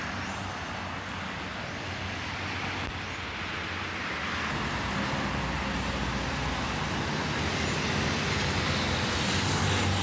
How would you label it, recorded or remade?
recorded